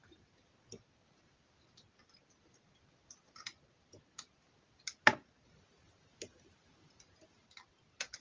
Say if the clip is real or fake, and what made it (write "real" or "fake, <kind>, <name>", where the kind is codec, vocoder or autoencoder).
real